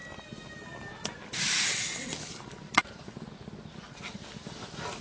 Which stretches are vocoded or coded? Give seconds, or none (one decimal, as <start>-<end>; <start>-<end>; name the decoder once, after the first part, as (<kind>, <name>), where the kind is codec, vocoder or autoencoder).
none